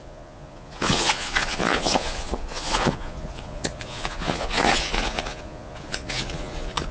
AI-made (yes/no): yes